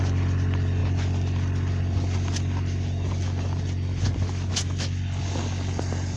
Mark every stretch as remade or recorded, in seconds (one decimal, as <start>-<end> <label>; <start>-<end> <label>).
0.0-6.2 recorded

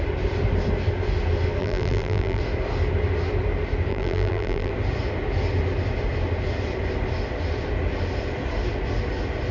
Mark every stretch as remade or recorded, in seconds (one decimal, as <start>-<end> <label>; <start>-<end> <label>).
0.0-1.6 recorded; 1.6-2.4 remade; 2.4-3.9 recorded; 3.9-4.7 remade; 4.7-9.5 recorded

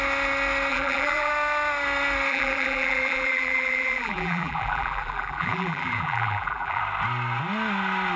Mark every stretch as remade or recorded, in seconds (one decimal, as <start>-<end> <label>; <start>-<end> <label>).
0.0-0.7 recorded; 0.7-1.3 remade; 1.3-2.3 recorded; 2.3-6.8 remade; 6.8-8.2 recorded

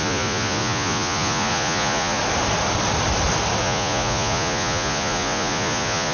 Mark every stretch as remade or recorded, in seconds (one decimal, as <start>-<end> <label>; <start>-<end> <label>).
0.0-2.2 remade; 2.2-3.6 recorded; 3.6-6.1 remade

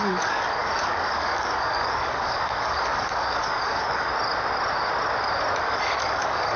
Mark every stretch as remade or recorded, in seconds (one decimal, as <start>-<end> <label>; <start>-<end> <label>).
0.0-4.1 remade; 4.1-5.6 recorded; 5.6-6.6 remade

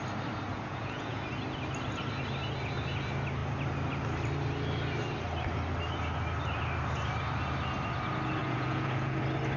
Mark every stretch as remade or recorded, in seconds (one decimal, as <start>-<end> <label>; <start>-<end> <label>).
0.0-0.5 recorded; 0.5-1.2 remade; 1.2-8.4 recorded; 8.4-9.2 remade; 9.2-9.6 recorded

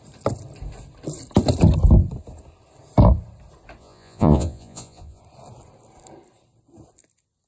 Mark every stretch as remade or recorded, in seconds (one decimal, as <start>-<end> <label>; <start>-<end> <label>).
0.0-3.8 recorded; 3.8-5.2 remade; 5.2-7.5 recorded